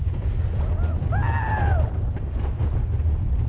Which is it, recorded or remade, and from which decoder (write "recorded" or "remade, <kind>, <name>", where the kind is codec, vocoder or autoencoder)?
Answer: recorded